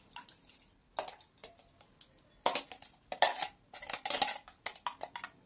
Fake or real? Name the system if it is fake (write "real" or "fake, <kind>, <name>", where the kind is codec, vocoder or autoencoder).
real